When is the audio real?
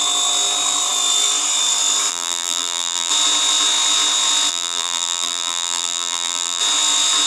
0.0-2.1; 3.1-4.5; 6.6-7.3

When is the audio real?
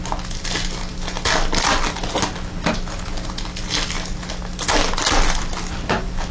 0.0-6.3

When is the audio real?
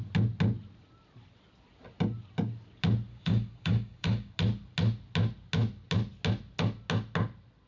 0.0-3.1; 4.3-7.7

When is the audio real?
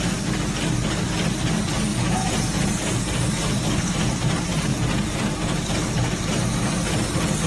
0.0-1.9; 2.7-4.7; 5.6-7.5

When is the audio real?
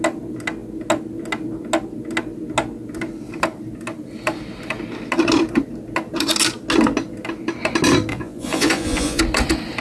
0.0-8.1; 9.2-9.8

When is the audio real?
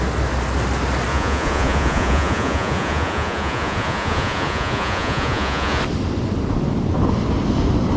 0.0-1.1; 5.8-8.0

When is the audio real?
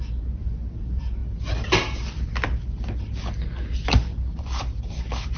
0.0-5.4